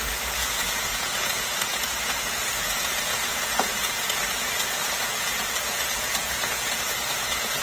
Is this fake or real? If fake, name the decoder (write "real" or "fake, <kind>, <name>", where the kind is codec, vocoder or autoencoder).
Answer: fake, vocoder, Vocos